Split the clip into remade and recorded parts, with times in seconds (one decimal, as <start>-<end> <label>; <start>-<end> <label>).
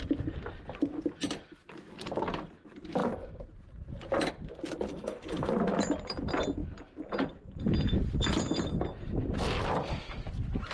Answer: 0.0-4.9 recorded; 4.9-5.5 remade; 5.5-10.7 recorded